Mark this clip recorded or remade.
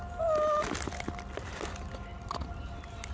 recorded